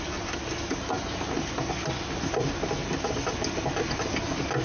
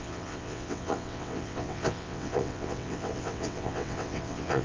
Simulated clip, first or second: second